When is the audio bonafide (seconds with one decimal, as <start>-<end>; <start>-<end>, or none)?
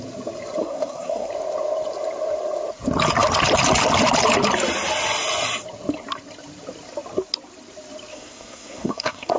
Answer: 0.0-0.6; 1.3-8.1